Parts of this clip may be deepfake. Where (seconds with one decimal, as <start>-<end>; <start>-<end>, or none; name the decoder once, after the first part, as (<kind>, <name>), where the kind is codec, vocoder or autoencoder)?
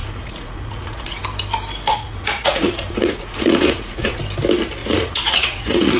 0.0-1.2 (vocoder, Vocos); 1.9-4.2; 4.8-6.0